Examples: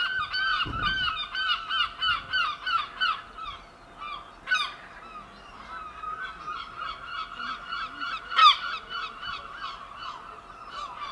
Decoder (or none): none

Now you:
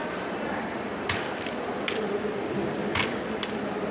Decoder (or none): vocoder, BigVGAN v2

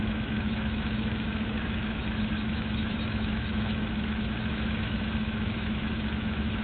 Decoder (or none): autoencoder, DAC-VAE